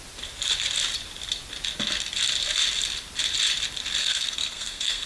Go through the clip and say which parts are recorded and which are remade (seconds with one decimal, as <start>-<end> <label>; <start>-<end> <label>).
0.0-4.0 recorded; 4.0-5.1 remade